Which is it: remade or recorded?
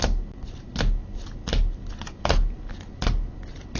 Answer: recorded